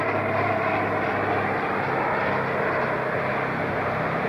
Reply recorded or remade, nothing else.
recorded